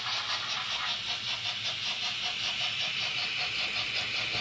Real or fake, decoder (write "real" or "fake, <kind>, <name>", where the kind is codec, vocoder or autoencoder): real